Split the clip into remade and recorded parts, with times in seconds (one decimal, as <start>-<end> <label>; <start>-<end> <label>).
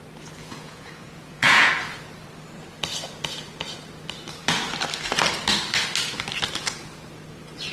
0.0-0.4 recorded; 0.4-1.7 remade; 1.7-7.7 recorded